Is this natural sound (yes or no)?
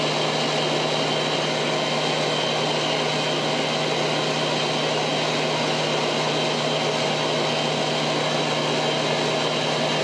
yes